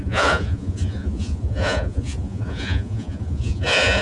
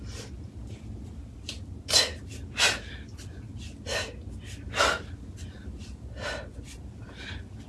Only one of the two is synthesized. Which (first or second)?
first